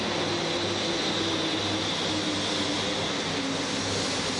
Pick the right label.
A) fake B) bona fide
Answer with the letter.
B